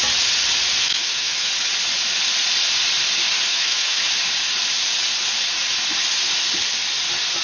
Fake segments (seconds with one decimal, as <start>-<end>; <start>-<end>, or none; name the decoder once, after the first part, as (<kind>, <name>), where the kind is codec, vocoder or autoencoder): 0.8-1.5 (autoencoder, DAC-VAE); 3.5-4.1

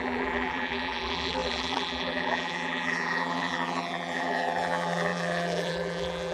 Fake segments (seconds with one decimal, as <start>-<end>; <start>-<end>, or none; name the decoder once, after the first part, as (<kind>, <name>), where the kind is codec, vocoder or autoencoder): 0.0-6.3 (vocoder, BigVGAN v2)

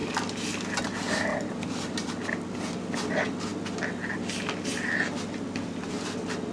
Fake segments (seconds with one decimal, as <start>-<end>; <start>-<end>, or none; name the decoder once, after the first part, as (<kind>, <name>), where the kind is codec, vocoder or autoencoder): 1.3-2.1 (vocoder, BigVGAN v2)

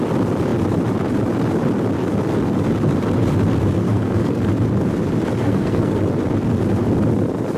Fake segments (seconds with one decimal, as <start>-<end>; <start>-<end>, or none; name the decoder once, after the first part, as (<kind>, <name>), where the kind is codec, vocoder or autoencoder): 3.8-4.5 (codec, SNAC); 5.4-6.0

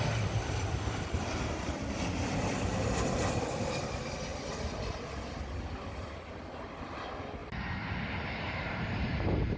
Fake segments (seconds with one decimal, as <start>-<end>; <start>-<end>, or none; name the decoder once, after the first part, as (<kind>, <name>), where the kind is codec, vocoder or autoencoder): 7.4-9.6 (vocoder, BigVGAN v2)

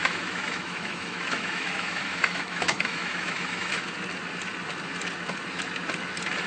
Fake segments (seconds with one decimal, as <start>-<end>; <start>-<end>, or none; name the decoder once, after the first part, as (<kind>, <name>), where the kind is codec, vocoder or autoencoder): 0.0-3.9 (autoencoder, DAC-VAE)